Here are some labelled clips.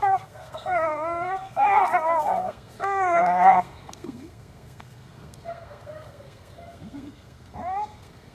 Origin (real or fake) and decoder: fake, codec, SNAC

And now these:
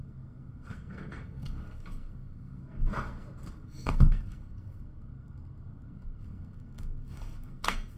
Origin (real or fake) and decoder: fake, codec, SNAC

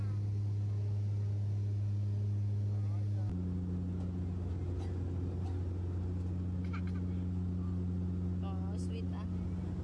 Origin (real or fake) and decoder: real